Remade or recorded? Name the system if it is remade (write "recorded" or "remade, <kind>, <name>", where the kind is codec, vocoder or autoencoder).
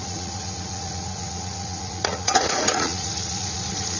remade, vocoder, Vocos